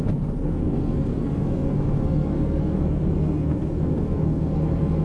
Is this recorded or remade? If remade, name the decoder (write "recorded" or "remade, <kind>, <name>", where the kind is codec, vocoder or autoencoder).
remade, codec, SNAC